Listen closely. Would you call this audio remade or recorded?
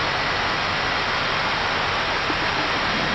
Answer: recorded